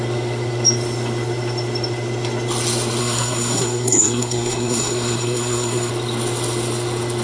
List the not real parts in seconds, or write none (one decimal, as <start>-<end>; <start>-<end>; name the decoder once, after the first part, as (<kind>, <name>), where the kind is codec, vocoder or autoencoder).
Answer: 3.0-5.9 (codec, SNAC)